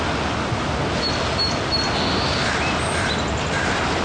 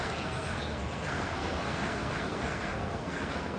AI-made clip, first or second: second